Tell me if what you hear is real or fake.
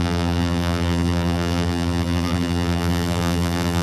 fake